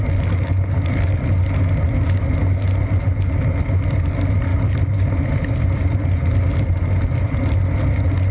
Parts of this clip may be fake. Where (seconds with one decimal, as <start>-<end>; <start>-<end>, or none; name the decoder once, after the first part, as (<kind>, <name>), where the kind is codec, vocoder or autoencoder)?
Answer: 4.5-7.5 (vocoder, BigVGAN v2)

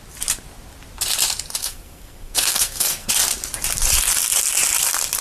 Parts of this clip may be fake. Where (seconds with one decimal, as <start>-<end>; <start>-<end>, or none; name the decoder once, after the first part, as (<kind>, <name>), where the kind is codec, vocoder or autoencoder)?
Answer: 1.6-3.1 (codec, SNAC)

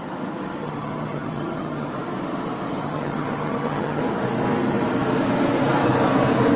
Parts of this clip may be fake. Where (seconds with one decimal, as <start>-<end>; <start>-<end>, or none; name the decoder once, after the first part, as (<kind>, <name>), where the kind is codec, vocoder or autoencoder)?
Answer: 0.6-1.9 (vocoder, HiFi-GAN); 2.8-4.0

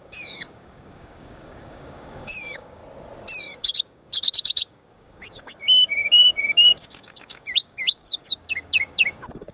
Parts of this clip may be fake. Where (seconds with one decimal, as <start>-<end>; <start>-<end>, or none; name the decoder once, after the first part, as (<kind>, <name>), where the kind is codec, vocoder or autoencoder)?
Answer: 0.0-2.8 (codec, DAC); 3.4-9.5

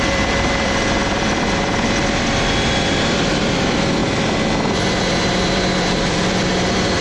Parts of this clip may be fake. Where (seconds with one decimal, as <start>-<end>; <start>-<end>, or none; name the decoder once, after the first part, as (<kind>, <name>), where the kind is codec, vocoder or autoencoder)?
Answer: 0.0-4.0 (vocoder, BigVGAN v2); 5.0-7.0

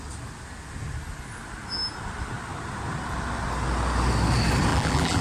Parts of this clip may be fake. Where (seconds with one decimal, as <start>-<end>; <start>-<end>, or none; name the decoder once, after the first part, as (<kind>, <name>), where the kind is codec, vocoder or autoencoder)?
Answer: 4.7-5.2 (vocoder, BigVGAN v2)